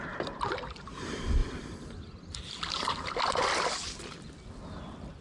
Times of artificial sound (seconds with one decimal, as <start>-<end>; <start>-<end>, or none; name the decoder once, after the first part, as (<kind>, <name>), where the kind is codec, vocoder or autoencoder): none